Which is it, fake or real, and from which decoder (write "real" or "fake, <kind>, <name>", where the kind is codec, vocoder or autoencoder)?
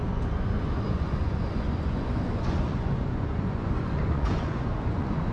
fake, vocoder, Vocos